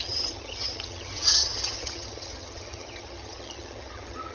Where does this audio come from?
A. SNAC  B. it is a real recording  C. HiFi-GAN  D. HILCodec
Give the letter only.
C